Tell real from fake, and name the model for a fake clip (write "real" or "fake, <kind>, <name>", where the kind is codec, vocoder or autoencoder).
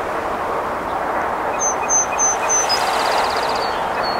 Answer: real